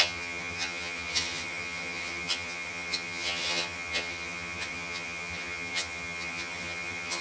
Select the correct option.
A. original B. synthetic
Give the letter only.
B